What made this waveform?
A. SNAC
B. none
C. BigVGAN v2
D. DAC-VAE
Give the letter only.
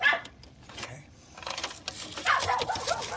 C